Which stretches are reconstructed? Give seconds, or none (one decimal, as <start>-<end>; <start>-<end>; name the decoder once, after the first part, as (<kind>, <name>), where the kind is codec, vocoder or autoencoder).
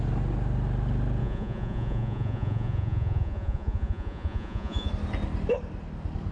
1.2-4.9 (vocoder, Vocos)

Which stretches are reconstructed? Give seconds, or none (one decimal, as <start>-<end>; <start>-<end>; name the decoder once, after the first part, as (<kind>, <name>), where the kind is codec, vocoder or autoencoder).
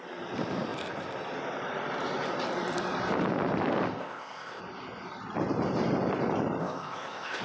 4.0-4.6 (codec, ZipCodec); 6.6-7.4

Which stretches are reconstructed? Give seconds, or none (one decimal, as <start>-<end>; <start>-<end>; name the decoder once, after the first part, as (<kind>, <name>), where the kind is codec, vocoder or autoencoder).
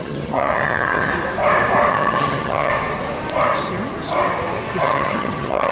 0.0-1.1 (vocoder, HiFi-GAN); 1.9-2.7; 4.8-5.7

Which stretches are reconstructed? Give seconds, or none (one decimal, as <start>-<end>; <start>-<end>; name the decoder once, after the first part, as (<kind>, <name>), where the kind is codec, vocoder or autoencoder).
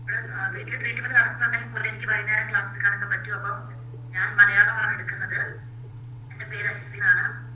4.8-7.0 (vocoder, WaveNeXt)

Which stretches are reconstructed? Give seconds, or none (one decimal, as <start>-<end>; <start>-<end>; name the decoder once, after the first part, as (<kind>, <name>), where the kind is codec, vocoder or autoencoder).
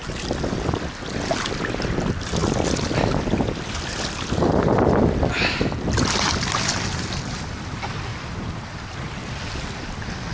8.1-9.3 (vocoder, BigVGAN v2)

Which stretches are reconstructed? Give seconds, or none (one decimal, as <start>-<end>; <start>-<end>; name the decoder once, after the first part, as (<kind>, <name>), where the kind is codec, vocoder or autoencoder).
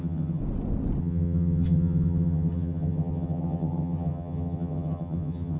0.0-0.4 (vocoder, HiFi-GAN); 1.0-5.6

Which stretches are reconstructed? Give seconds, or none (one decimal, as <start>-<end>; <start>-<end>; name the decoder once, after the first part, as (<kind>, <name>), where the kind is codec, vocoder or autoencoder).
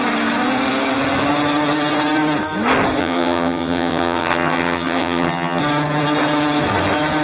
3.0-5.6 (vocoder, HiFi-GAN)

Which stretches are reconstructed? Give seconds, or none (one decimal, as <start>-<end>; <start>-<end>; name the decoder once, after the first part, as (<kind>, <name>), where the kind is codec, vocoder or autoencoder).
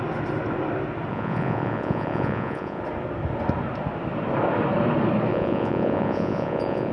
1.1-2.8 (vocoder, Vocos); 5.3-6.9